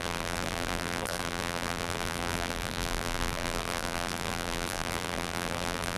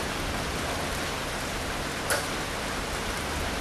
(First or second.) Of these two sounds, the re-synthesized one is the first